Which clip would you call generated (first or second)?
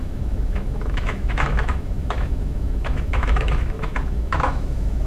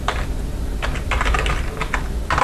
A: first